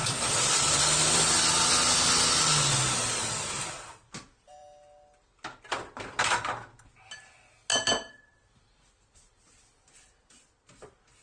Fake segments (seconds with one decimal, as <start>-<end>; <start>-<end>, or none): 0.0-1.7; 7.7-10.5